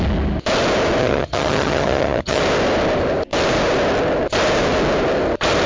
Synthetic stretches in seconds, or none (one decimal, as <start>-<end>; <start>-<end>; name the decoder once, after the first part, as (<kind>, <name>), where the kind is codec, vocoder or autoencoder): 1.0-2.4 (vocoder, HiFi-GAN)